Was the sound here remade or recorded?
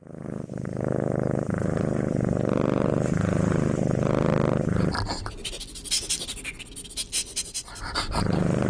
recorded